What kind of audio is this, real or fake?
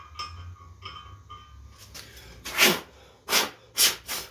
real